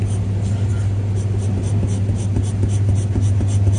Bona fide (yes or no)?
yes